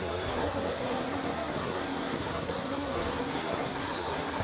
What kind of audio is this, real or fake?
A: fake